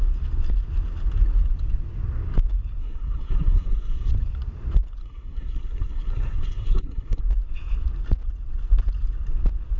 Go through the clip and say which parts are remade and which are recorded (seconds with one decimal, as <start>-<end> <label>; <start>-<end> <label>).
0.0-2.8 recorded; 2.8-4.1 remade; 4.1-5.0 recorded; 5.0-7.2 remade; 7.2-9.8 recorded